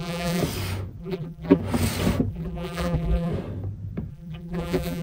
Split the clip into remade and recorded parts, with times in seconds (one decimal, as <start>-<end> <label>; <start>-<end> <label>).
0.0-0.4 remade; 0.4-1.0 recorded; 1.0-1.6 remade; 1.6-2.3 recorded; 2.3-3.3 remade; 3.3-4.1 recorded; 4.1-5.0 remade